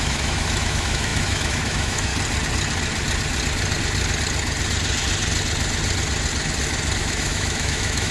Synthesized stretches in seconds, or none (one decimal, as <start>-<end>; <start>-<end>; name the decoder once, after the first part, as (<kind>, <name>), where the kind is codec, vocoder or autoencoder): 0.0-2.1 (autoencoder, DAC-VAE); 7.0-8.1